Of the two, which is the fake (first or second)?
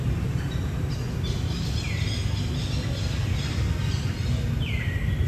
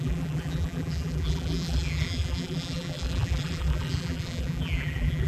second